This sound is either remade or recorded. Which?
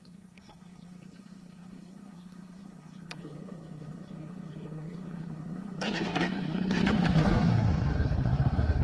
remade